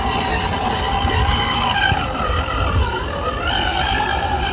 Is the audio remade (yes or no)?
no